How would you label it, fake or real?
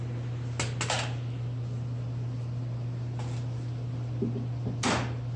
real